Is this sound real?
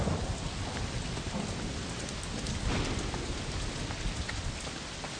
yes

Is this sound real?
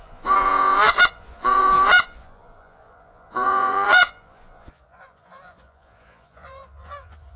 no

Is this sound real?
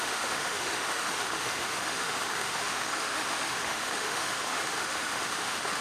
no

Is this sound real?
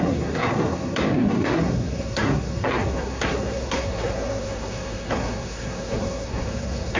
no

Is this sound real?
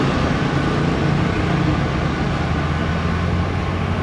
yes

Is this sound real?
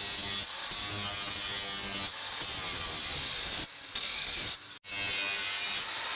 yes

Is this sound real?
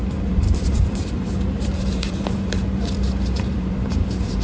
no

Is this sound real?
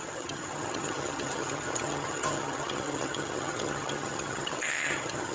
no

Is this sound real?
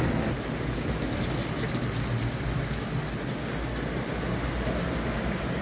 yes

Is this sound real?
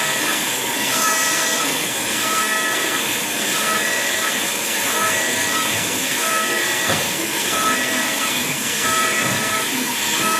no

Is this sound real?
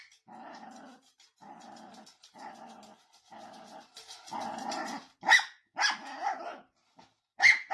yes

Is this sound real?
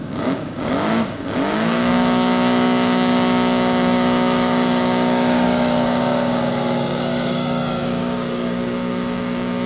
no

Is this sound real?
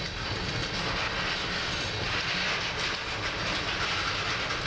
yes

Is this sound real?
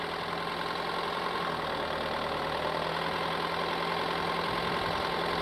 yes